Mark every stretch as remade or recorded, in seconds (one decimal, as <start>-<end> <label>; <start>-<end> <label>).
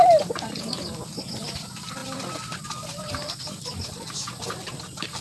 0.0-5.2 recorded